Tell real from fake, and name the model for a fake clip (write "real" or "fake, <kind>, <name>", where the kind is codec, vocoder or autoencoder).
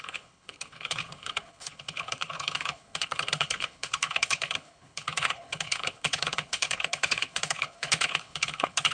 fake, codec, HILCodec